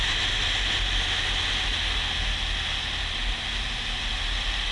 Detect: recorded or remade recorded